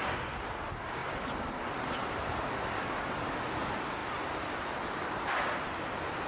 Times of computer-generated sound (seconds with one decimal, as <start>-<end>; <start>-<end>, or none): none